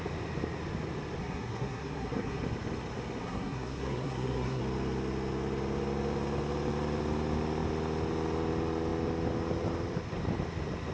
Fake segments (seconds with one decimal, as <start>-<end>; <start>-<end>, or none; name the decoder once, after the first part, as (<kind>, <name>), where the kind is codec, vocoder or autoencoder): 1.2-2.4 (codec, SNAC); 3.2-4.6